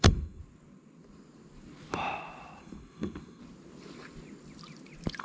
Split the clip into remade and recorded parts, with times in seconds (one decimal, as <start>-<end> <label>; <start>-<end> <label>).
0.0-0.4 remade; 0.4-2.6 recorded; 2.6-3.4 remade; 3.4-5.2 recorded